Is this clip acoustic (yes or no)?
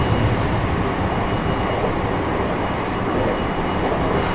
yes